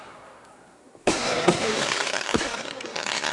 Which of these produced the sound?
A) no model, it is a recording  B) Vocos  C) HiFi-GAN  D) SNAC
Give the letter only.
D